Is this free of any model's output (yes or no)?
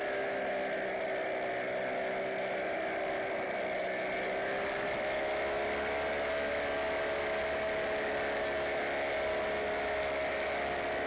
yes